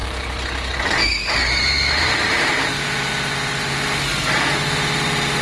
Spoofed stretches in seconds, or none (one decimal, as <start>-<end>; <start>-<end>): 0.0-0.8; 1.4-3.1